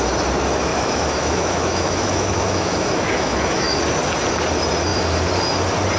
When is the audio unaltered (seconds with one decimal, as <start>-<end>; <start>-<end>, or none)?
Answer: 0.0-0.7; 3.8-6.0